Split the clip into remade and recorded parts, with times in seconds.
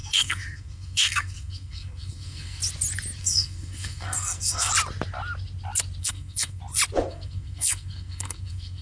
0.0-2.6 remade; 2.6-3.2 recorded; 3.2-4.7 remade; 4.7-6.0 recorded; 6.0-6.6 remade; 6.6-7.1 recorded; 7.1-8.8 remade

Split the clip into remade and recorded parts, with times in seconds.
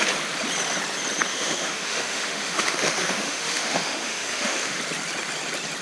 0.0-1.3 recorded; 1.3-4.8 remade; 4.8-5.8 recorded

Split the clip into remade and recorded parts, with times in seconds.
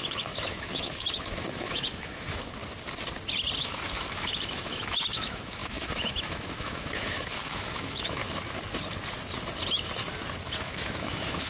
0.0-2.6 remade; 2.6-3.6 recorded; 3.6-8.2 remade; 8.2-10.6 recorded; 10.6-11.5 remade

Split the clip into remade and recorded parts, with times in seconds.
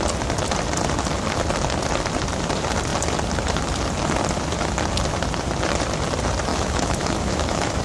0.0-6.5 recorded; 6.5-7.8 remade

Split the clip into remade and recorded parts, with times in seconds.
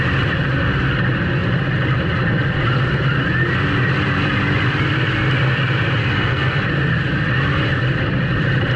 0.0-6.0 recorded; 6.0-6.6 remade; 6.6-8.8 recorded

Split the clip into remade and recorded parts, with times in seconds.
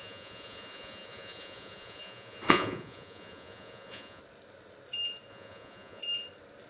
0.0-4.2 remade; 4.2-5.3 recorded; 5.3-6.0 remade; 6.0-6.7 recorded